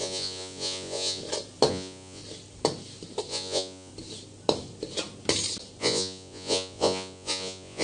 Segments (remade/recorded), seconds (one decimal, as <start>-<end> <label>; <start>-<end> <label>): 0.0-1.2 remade; 1.2-1.7 recorded; 1.7-2.2 remade; 2.2-3.3 recorded; 3.3-3.9 remade; 3.9-5.8 recorded; 5.8-7.8 remade